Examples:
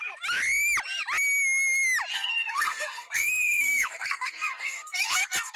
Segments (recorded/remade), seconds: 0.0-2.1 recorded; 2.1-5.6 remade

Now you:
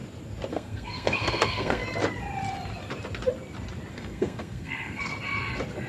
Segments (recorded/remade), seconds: 0.0-0.5 recorded; 0.5-1.8 remade; 1.8-3.9 recorded; 3.9-5.1 remade; 5.1-5.9 recorded

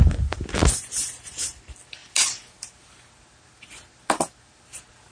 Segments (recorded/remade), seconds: 0.0-5.1 recorded

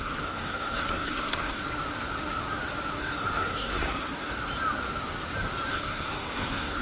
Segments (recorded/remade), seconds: 0.0-1.6 remade; 1.6-3.0 recorded; 3.0-4.3 remade; 4.3-5.7 recorded; 5.7-6.8 remade